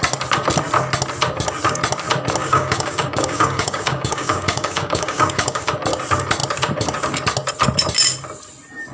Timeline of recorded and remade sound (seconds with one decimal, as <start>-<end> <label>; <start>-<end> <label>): 0.0-2.4 recorded; 2.4-5.7 remade; 5.7-8.9 recorded